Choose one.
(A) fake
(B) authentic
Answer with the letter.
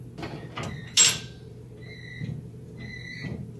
B